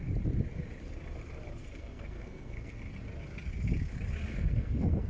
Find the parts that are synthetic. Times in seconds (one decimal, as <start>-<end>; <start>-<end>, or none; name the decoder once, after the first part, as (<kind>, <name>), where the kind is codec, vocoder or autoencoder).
1.6-2.7 (codec, SNAC); 4.3-5.1